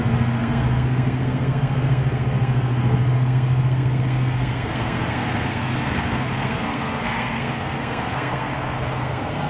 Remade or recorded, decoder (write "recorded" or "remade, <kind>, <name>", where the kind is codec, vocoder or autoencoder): remade, codec, SNAC